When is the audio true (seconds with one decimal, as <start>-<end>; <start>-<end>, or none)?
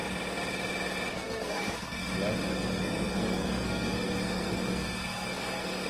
0.0-1.1; 2.0-2.5